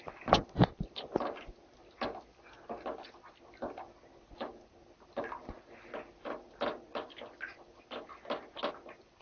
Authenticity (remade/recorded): recorded